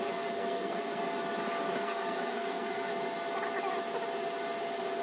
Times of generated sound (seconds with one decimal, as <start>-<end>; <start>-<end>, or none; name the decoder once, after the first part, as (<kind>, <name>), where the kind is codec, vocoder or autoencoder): 0.0-1.0 (codec, SNAC); 1.8-2.9

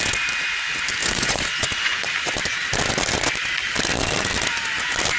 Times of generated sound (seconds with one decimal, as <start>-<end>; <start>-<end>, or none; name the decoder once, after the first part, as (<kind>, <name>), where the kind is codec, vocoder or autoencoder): 1.0-2.0 (vocoder, Vocos)